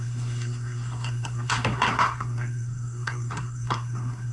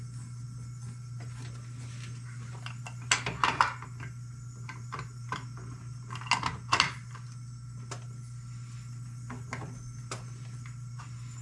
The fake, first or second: first